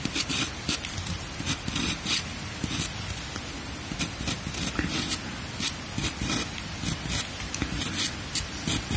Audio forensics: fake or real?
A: real